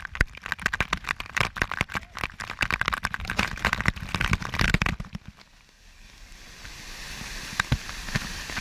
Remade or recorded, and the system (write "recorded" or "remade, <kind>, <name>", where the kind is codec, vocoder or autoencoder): recorded